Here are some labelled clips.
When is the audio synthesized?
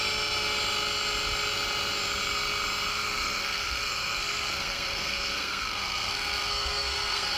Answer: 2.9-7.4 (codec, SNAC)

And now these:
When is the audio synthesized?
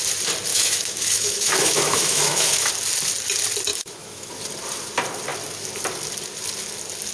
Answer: 0.5-2.7 (autoencoder, DAC-VAE); 3.7-4.3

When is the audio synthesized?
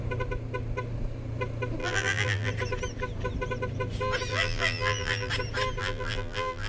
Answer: 1.8-2.5 (vocoder, BigVGAN v2); 4.3-5.3; 5.8-6.7